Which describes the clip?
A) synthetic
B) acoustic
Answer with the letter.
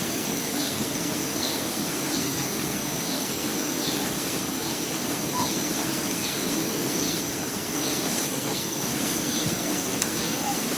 A